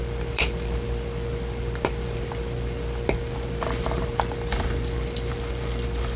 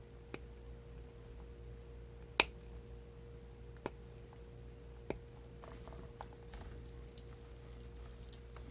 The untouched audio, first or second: second